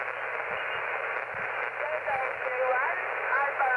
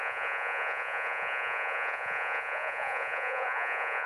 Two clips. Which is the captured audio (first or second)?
first